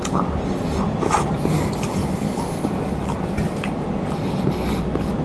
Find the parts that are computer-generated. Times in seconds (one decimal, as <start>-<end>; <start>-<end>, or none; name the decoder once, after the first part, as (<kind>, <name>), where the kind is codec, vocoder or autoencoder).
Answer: none